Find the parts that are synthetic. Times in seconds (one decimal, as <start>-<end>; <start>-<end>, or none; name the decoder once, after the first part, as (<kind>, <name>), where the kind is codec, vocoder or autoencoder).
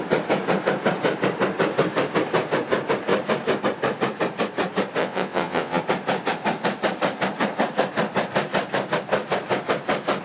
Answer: 5.0-5.8 (vocoder, WaveNeXt)